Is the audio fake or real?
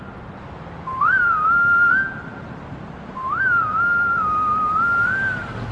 real